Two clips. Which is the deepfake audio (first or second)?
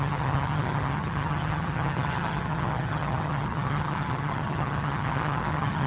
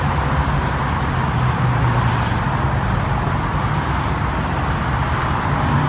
first